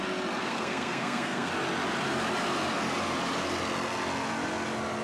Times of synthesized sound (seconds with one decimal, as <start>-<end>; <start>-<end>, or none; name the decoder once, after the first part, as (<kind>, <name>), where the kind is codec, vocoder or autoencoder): 0.4-1.5 (codec, SNAC)